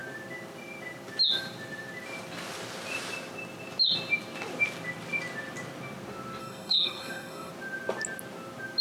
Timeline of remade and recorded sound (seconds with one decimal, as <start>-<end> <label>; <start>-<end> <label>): 0.0-6.4 recorded; 6.4-7.5 remade; 7.5-8.8 recorded